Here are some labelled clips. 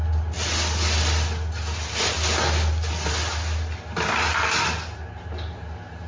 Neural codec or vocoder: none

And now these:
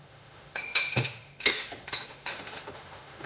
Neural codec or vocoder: autoencoder, DAC-VAE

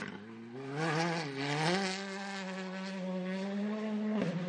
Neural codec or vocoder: none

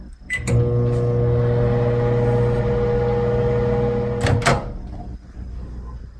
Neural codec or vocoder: none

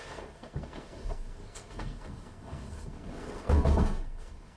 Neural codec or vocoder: codec, SNAC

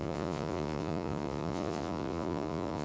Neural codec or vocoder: vocoder, Vocos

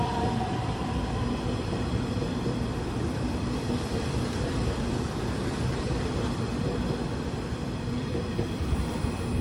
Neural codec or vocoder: vocoder, BigVGAN v2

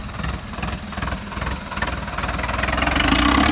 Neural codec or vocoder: none